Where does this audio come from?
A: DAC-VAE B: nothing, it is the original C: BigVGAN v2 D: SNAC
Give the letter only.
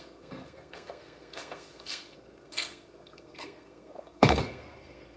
D